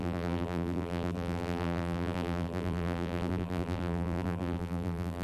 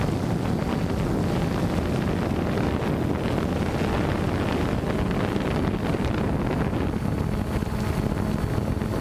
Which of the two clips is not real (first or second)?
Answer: first